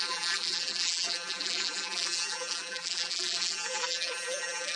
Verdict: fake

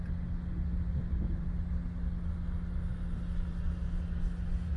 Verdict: real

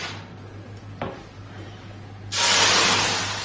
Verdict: real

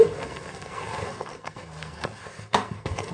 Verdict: fake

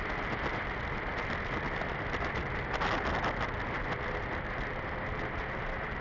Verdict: real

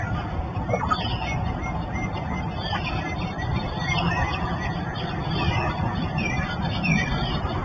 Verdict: real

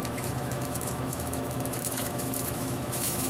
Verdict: fake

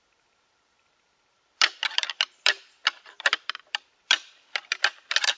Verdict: fake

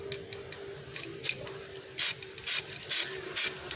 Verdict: real